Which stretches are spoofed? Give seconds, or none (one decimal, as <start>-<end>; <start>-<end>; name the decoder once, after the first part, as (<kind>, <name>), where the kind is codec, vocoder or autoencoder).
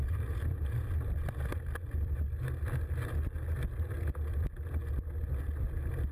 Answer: none